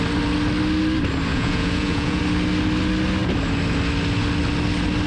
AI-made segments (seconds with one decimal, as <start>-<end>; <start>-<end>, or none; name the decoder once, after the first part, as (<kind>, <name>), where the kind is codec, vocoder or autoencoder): 1.3-2.2 (vocoder, Vocos)